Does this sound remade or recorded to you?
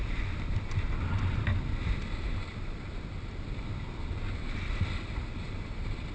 recorded